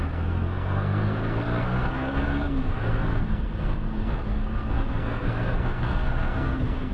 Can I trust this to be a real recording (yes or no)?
no